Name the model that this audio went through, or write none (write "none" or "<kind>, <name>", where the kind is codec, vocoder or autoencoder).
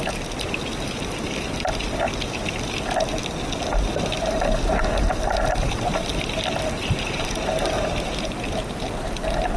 none